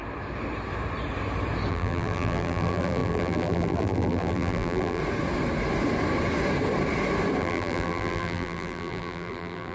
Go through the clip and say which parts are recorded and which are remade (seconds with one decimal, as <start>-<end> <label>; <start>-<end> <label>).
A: 0.0-1.7 recorded; 1.7-5.0 remade; 5.0-7.4 recorded; 7.4-9.7 remade

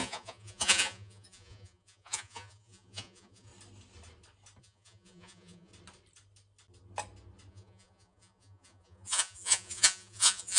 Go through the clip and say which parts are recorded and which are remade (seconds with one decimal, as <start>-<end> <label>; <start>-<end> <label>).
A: 0.0-3.5 remade; 3.5-4.6 recorded; 4.6-5.7 remade; 5.7-7.5 recorded; 7.5-10.6 remade

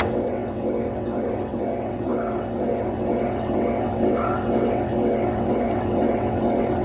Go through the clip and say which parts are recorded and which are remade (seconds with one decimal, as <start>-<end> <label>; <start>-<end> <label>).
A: 0.0-6.8 remade

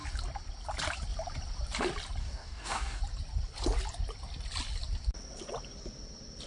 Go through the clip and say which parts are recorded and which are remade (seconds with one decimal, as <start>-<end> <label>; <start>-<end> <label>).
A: 0.0-2.2 recorded; 2.2-3.0 remade; 3.0-6.5 recorded

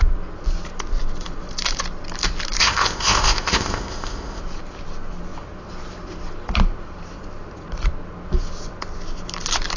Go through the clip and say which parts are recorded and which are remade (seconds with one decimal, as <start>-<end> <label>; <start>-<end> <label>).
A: 0.0-2.6 recorded; 2.6-4.4 remade; 4.4-9.8 recorded

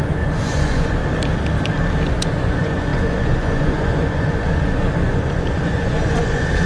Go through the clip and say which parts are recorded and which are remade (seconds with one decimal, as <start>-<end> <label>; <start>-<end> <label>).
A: 0.0-1.0 remade; 1.0-2.1 recorded; 2.1-6.7 remade

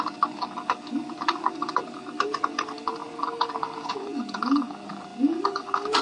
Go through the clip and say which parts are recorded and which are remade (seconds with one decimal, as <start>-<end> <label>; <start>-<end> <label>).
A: 0.0-6.0 remade

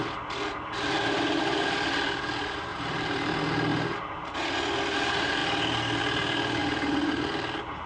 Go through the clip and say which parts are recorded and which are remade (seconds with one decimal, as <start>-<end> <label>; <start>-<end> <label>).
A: 0.0-2.7 recorded; 2.7-3.3 remade; 3.3-3.7 recorded; 3.7-4.6 remade; 4.6-6.6 recorded; 6.6-7.9 remade